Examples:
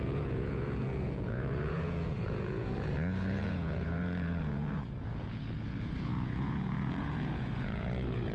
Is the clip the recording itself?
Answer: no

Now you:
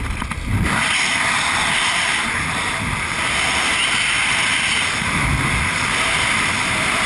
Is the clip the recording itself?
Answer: yes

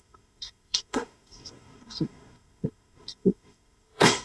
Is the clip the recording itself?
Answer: no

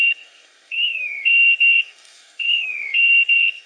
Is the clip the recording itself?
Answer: no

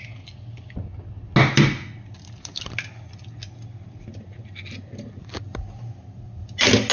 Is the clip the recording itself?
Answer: yes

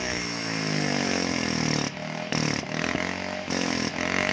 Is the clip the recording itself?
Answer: no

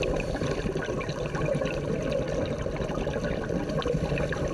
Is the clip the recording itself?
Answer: yes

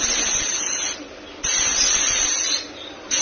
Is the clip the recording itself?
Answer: yes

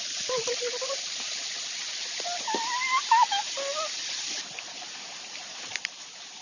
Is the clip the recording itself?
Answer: yes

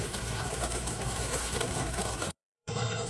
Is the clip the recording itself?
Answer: no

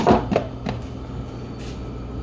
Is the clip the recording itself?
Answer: yes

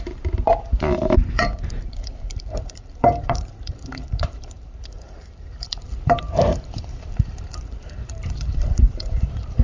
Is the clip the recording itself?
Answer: no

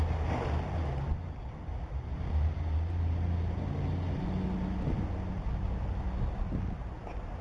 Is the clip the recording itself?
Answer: yes